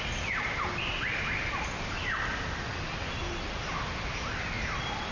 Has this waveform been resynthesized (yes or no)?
no